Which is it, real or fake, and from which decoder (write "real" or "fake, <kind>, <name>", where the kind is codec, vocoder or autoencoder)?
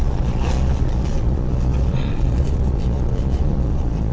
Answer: fake, vocoder, Vocos